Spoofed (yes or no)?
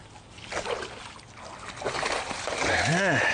no